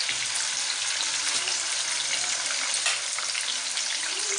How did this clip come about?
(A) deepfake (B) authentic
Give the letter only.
B